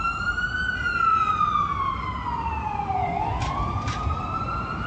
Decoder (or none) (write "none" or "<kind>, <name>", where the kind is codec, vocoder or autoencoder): none